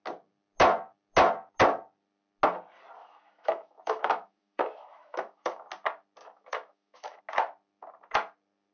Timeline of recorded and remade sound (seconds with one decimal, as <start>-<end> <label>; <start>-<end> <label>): 0.0-3.0 recorded; 3.0-5.7 remade; 5.7-6.2 recorded; 6.2-7.2 remade; 7.2-8.7 recorded